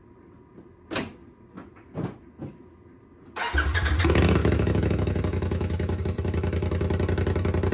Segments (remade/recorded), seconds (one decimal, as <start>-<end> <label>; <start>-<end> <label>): 0.0-4.4 recorded; 4.4-6.0 remade; 6.0-7.7 recorded